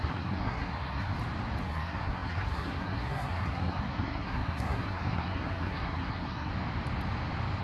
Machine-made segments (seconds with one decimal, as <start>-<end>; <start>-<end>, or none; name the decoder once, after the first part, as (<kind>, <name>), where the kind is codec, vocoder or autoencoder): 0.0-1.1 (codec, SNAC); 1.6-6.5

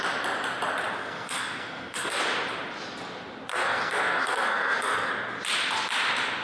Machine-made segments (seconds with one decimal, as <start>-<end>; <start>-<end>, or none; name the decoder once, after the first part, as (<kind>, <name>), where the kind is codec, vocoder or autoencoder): 1.0-2.2 (codec, SNAC); 3.5-5.1

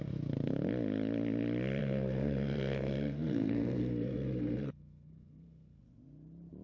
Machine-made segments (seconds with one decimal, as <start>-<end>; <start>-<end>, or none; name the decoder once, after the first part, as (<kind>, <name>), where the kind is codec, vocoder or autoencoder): 1.8-5.8 (codec, SNAC)

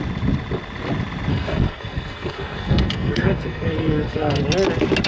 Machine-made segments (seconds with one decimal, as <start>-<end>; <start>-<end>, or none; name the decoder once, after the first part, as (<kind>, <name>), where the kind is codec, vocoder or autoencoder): 1.3-4.4 (codec, SNAC)

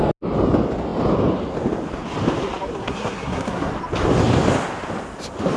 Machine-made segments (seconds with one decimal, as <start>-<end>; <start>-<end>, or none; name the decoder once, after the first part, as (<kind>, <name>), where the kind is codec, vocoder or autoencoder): 2.8-3.7 (codec, SNAC)

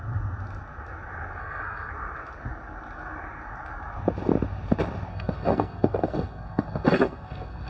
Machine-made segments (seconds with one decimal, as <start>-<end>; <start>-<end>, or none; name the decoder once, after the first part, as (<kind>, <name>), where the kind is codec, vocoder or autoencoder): 1.4-1.9 (codec, SNAC); 5.1-7.7

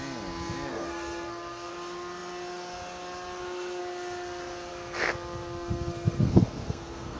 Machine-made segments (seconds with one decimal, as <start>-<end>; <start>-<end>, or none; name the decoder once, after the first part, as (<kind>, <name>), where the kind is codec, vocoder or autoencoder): 0.7-1.7 (codec, SNAC); 4.7-7.2

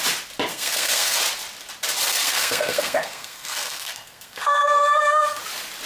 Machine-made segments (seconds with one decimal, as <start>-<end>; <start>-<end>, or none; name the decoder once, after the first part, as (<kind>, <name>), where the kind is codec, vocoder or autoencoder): 0.5-1.2 (codec, SNAC); 2.1-5.4